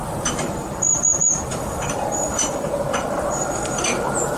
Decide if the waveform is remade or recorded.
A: remade